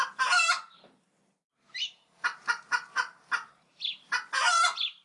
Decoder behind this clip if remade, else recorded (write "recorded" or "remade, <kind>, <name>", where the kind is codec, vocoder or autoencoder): recorded